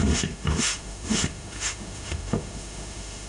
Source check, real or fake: fake